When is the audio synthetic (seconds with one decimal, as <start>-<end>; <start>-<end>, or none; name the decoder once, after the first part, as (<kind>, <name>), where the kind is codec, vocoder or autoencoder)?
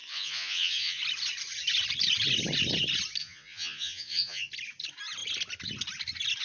0.0-1.0 (vocoder, Vocos); 3.2-4.5